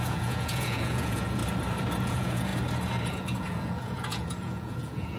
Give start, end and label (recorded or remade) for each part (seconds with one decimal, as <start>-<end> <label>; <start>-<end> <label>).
0.0-1.4 remade; 1.4-2.0 recorded; 2.0-2.5 remade; 2.5-3.1 recorded; 3.1-5.2 remade